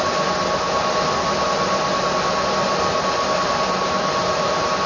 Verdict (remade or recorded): recorded